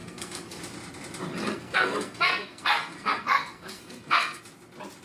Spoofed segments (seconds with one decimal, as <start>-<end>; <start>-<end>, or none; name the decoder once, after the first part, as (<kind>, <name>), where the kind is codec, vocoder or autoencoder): 0.0-0.6 (codec, SNAC); 1.4-4.4